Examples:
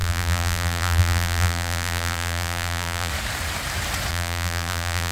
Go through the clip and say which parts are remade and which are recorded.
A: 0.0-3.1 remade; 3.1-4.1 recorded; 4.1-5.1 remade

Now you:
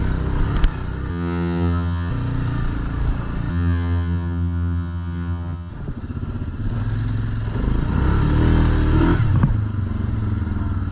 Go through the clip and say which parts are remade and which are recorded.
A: 0.0-1.1 recorded; 1.1-2.1 remade; 2.1-3.5 recorded; 3.5-5.7 remade; 5.7-10.9 recorded

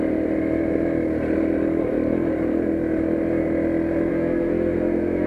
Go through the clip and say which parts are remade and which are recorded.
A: 0.0-4.1 recorded; 4.1-5.3 remade

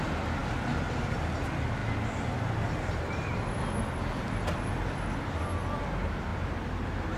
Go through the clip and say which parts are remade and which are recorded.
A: 0.0-6.3 recorded; 6.3-7.2 remade

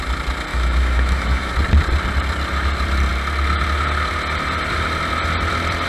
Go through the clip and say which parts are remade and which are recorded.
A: 0.0-0.5 recorded; 0.5-1.5 remade; 1.5-5.9 recorded

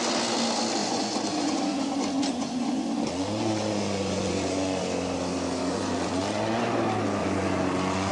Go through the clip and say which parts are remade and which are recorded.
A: 0.0-0.8 recorded; 0.8-4.8 remade; 4.8-5.6 recorded; 5.6-6.6 remade; 6.6-7.2 recorded; 7.2-8.1 remade

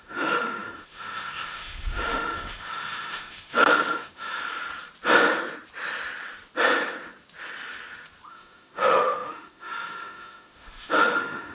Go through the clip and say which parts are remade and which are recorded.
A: 0.0-4.4 remade; 4.4-8.3 recorded; 8.3-11.5 remade